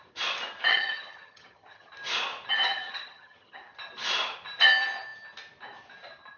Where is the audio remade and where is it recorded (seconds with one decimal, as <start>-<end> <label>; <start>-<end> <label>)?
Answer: 0.0-0.7 recorded; 0.7-1.9 remade; 1.9-2.7 recorded; 2.7-3.6 remade; 3.6-6.4 recorded